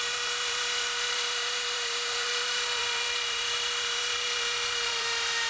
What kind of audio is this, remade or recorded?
remade